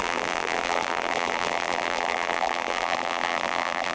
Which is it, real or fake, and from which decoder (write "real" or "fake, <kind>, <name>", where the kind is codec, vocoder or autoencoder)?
fake, vocoder, BigVGAN v2